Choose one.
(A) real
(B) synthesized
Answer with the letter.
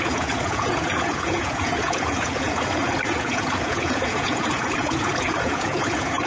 B